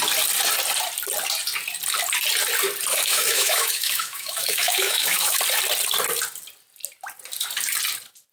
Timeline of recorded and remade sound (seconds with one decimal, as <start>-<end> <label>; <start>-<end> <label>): 0.0-2.9 recorded; 2.9-5.4 remade; 5.4-8.3 recorded